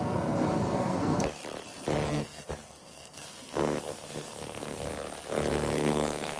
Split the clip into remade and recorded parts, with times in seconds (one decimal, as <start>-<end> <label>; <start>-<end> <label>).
0.0-1.4 remade; 1.4-2.1 recorded; 2.1-4.9 remade; 4.9-5.5 recorded; 5.5-6.4 remade